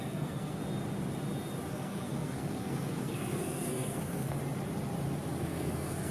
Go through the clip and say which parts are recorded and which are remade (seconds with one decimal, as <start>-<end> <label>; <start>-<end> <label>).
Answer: 0.0-0.6 remade; 0.6-1.7 recorded; 1.7-4.4 remade; 4.4-5.4 recorded; 5.4-6.1 remade